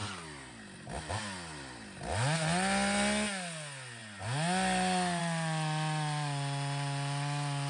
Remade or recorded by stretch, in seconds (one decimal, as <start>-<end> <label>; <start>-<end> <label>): 0.0-7.7 recorded

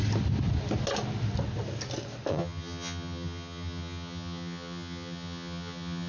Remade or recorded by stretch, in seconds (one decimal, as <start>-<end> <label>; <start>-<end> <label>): 0.0-2.3 recorded; 2.3-6.1 remade

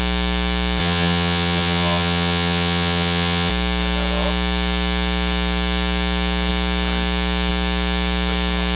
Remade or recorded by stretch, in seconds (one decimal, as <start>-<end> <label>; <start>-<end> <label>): 0.0-0.8 recorded; 0.8-3.5 remade; 3.5-8.8 recorded

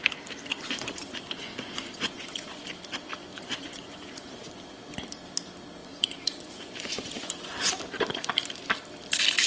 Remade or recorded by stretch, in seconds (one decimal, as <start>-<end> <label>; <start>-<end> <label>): 0.0-0.5 recorded; 0.5-2.6 remade; 2.6-3.3 recorded; 3.3-4.8 remade; 4.8-5.8 recorded; 5.8-7.6 remade; 7.6-9.5 recorded

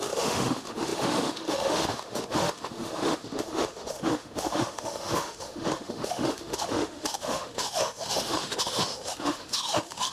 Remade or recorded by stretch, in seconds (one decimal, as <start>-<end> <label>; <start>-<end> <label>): 0.0-10.1 remade

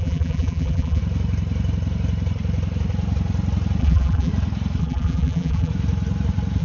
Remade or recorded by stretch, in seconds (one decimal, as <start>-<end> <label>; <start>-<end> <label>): 0.0-1.0 remade; 1.0-3.8 recorded; 3.8-4.3 remade; 4.3-4.8 recorded; 4.8-5.7 remade; 5.7-6.6 recorded